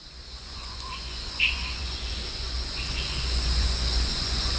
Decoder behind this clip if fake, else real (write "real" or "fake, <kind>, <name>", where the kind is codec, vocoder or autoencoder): fake, vocoder, Vocos